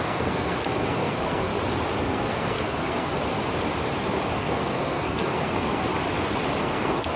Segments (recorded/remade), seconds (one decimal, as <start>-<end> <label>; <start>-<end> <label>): 0.0-1.5 remade; 1.5-2.0 recorded; 2.0-3.1 remade; 3.1-4.4 recorded; 4.4-5.9 remade; 5.9-6.6 recorded; 6.6-7.2 remade